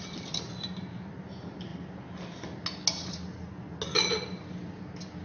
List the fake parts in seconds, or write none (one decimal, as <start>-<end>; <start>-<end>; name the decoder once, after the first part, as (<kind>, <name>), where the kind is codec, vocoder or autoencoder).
none